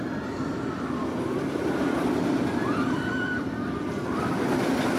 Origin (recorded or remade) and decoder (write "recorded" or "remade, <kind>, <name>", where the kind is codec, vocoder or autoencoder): recorded